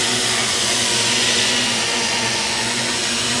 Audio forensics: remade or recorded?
remade